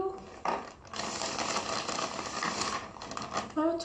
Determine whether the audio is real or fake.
real